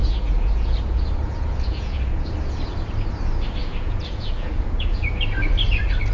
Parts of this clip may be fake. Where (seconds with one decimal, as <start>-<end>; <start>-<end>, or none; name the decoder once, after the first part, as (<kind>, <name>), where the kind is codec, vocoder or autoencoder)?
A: 0.0-2.6 (vocoder, Vocos); 3.6-5.1

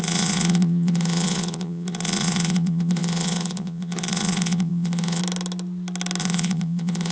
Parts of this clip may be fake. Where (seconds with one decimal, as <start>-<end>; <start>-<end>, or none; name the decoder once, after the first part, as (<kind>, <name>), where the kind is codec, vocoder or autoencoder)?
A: 0.0-5.2 (vocoder, Vocos); 6.2-7.1

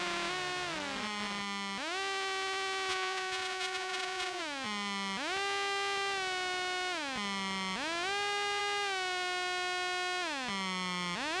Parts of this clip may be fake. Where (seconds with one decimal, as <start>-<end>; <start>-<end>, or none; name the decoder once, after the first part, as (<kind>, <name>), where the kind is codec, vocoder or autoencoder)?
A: 2.9-4.4 (vocoder, Vocos)

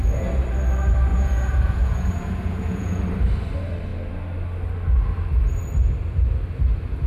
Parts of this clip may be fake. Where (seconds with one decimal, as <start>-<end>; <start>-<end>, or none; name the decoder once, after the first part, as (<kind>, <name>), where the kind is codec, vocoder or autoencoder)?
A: 1.1-3.0 (vocoder, Vocos)

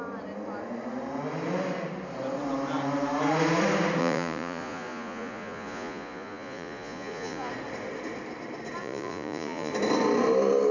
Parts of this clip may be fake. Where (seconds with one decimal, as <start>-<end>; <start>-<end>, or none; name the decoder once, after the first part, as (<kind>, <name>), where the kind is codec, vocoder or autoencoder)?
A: 4.0-7.5 (vocoder, Vocos); 8.8-9.7

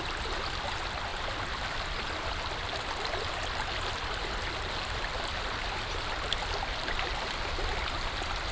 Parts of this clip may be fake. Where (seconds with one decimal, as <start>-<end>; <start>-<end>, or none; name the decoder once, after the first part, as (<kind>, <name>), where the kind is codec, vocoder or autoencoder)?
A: none

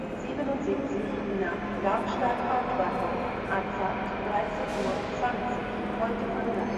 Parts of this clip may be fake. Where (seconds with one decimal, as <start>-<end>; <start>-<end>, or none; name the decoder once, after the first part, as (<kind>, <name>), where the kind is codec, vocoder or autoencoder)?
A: none

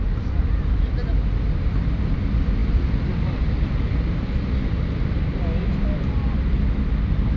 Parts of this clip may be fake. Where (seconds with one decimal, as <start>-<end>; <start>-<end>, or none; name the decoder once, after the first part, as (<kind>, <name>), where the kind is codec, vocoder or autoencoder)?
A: none